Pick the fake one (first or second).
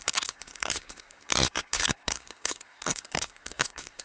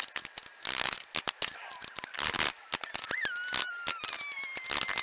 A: first